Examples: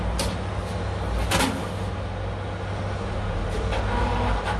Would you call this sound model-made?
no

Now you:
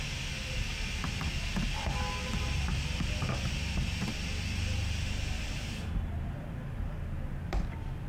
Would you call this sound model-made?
no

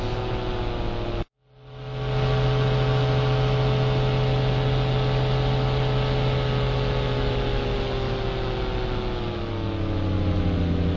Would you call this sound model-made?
no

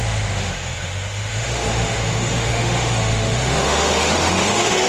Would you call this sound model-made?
yes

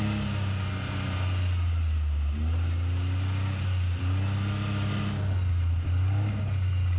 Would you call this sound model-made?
no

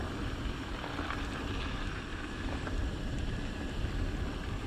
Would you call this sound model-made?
no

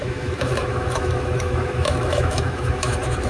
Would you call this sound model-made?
yes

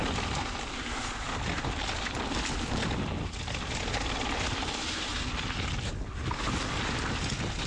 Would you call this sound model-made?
no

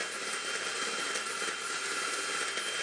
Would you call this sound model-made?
no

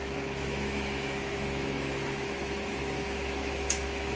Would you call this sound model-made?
yes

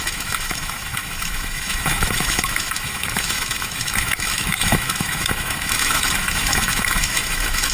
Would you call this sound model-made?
yes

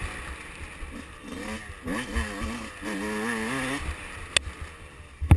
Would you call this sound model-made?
no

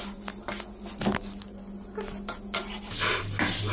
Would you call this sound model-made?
no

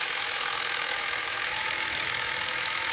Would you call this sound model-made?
yes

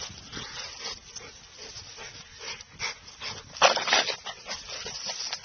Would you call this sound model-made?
no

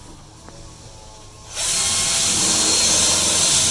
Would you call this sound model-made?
no